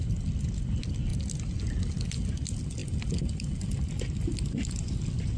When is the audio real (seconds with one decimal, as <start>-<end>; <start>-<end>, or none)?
0.0-5.4